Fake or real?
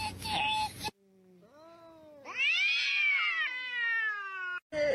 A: real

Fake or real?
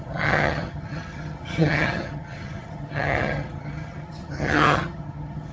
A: fake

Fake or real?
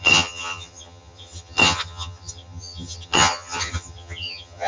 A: fake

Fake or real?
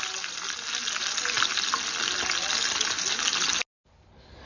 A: real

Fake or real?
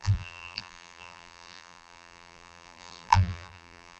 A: fake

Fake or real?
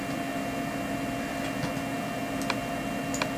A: real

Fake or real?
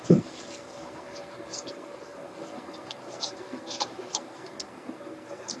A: fake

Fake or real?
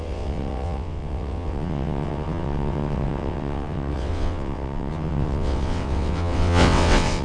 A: fake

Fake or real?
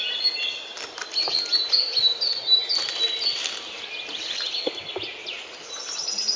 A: real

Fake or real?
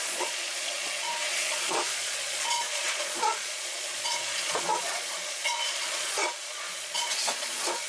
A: fake